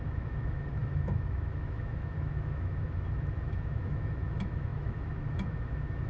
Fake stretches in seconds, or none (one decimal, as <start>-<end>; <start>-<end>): 0.0-6.1